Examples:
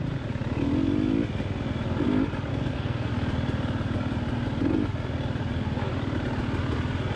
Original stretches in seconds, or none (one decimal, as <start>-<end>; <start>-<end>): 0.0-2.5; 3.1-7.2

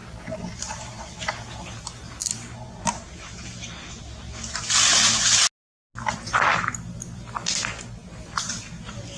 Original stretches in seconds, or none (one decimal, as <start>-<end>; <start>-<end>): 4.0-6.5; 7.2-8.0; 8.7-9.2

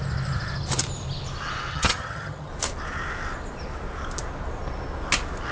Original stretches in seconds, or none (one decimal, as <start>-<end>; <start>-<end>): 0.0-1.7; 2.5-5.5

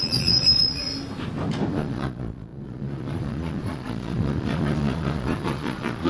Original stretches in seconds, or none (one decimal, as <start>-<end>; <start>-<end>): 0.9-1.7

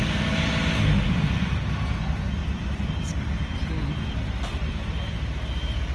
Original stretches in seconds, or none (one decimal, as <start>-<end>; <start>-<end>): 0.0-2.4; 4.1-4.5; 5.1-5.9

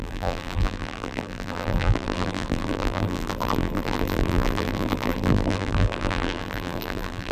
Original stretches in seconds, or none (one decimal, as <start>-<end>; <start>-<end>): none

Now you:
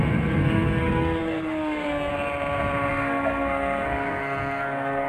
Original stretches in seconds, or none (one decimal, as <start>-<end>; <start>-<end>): 2.1-2.9

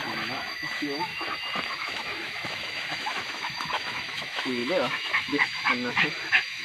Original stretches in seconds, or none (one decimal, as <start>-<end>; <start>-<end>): 1.1-1.7